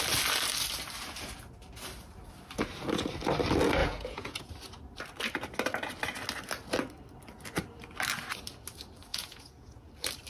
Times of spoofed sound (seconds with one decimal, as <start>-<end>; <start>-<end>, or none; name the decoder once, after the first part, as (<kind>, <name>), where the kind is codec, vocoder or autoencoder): 3.8-4.5 (vocoder, Vocos); 9.1-9.9